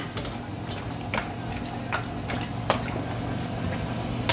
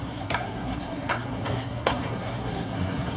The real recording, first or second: first